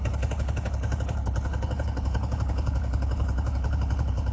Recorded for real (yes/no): no